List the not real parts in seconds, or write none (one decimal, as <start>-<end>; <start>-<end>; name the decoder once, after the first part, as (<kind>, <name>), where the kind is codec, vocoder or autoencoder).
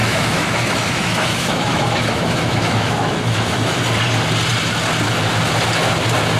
0.0-3.8 (autoencoder, DAC-VAE)